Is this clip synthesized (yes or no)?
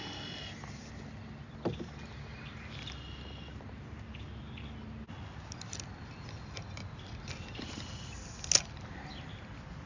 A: no